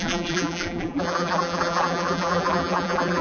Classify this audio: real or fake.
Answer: fake